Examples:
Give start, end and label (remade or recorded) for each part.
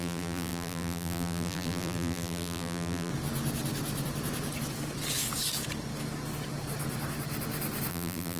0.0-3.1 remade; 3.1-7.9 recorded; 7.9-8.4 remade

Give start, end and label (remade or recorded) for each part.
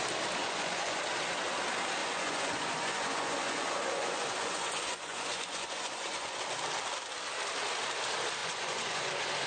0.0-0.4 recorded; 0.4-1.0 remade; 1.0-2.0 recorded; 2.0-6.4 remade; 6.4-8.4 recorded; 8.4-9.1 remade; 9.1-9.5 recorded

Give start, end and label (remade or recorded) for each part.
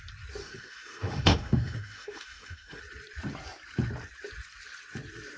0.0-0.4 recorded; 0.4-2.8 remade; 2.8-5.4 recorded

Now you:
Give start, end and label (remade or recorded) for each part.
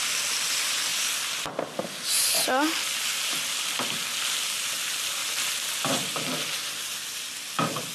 0.0-7.9 recorded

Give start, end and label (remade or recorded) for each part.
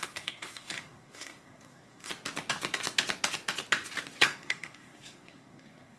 0.0-2.1 remade; 2.1-4.2 recorded; 4.2-6.0 remade